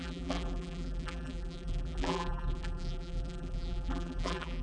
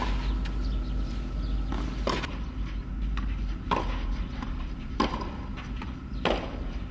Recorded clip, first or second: second